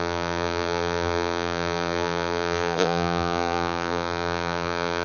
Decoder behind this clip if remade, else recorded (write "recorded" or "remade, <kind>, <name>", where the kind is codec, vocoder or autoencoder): remade, vocoder, BigVGAN v2